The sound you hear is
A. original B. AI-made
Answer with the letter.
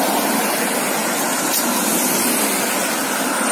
A